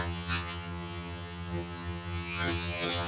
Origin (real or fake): fake